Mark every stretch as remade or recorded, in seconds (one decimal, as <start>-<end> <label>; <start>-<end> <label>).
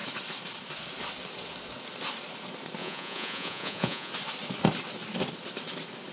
0.0-2.8 recorded; 2.8-4.1 remade; 4.1-6.1 recorded